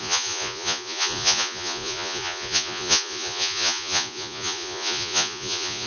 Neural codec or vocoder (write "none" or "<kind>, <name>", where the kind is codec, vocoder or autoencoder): vocoder, Vocos